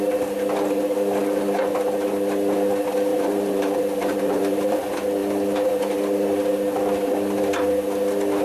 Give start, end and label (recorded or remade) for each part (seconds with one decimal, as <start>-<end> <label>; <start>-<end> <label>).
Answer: 0.0-3.1 recorded; 3.1-4.8 remade; 4.8-8.4 recorded